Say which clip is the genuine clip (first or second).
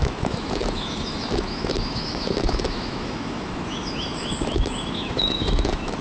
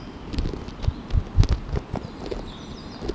second